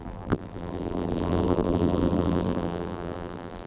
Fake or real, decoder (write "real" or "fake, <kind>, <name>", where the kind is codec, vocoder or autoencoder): fake, vocoder, BigVGAN v2